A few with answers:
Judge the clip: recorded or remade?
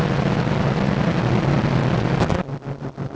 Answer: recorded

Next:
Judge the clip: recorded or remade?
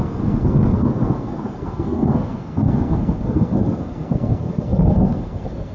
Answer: remade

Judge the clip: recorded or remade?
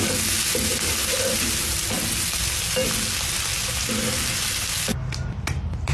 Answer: recorded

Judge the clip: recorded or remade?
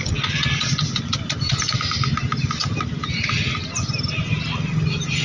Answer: recorded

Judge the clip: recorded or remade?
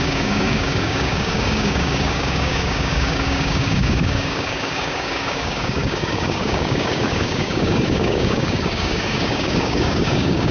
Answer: remade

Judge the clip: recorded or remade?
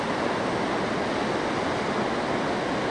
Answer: recorded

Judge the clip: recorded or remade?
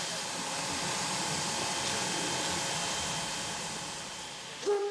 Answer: recorded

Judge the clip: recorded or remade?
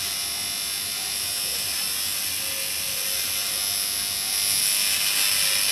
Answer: recorded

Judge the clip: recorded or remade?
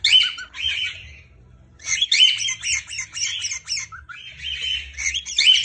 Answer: recorded